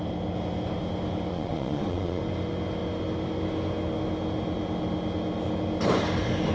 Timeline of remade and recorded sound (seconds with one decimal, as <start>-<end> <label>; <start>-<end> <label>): 0.0-1.3 recorded; 1.3-2.2 remade; 2.2-6.5 recorded